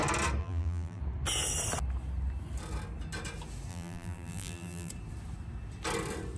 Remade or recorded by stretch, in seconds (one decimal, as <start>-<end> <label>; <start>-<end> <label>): 0.0-0.4 recorded; 0.4-1.0 remade; 1.0-3.7 recorded; 3.7-4.9 remade; 4.9-6.4 recorded